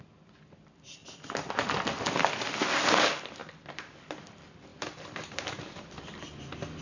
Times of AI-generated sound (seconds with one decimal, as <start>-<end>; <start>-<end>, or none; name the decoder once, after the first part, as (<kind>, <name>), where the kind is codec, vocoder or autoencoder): 3.4-4.2 (vocoder, BigVGAN v2); 4.7-6.0

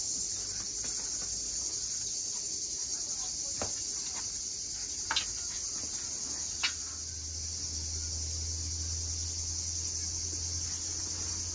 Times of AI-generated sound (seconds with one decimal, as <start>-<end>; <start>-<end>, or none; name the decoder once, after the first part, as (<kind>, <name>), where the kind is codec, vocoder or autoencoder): none

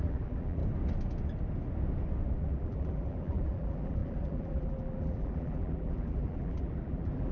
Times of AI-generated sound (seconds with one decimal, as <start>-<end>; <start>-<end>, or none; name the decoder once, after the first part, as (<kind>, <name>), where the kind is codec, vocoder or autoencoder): 0.0-0.6 (vocoder, BigVGAN v2); 2.3-7.3

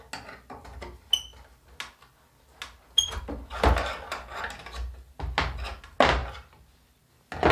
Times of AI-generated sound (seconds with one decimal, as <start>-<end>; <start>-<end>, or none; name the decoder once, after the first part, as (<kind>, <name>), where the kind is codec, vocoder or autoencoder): 6.2-7.1 (vocoder, BigVGAN v2)

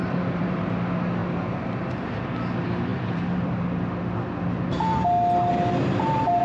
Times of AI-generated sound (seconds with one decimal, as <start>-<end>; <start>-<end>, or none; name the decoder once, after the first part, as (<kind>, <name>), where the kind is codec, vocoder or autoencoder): 0.0-0.6 (vocoder, BigVGAN v2); 2.9-3.6; 5.5-6.4

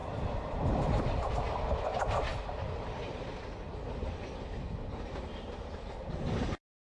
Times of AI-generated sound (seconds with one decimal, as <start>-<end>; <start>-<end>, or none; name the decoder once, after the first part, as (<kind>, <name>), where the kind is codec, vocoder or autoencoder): 0.0-1.3 (vocoder, BigVGAN v2)